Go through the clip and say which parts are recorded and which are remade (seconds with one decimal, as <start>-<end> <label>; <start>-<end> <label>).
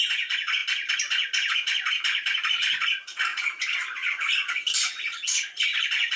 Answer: 0.0-6.2 recorded